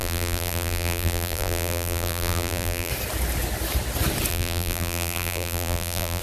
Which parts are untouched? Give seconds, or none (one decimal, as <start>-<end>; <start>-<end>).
2.9-4.3